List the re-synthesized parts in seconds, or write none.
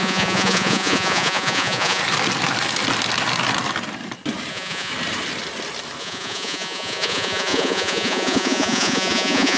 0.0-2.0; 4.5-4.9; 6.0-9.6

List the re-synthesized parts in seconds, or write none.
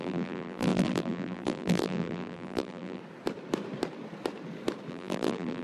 0.0-3.0; 4.9-5.6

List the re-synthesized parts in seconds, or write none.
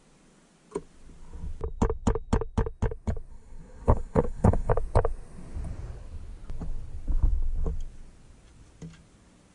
3.3-4.7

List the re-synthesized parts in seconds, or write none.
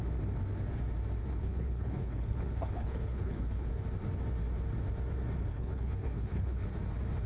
1.2-3.7; 5.5-6.7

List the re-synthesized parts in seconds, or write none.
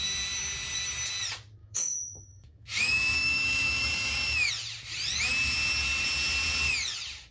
1.6-4.5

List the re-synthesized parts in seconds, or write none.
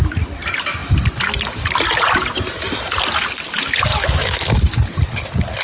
3.9-4.6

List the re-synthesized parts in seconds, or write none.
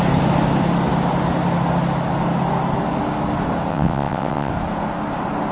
3.7-4.5